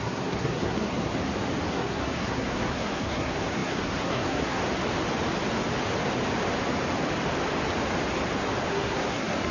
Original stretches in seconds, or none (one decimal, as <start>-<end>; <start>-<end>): 1.1-1.7; 4.6-8.7